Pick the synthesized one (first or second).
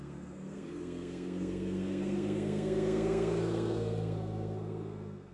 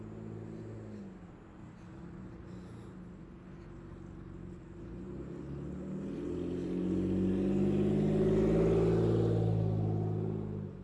first